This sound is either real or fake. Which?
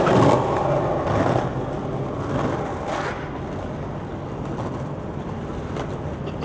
real